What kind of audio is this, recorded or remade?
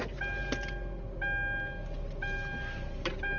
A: recorded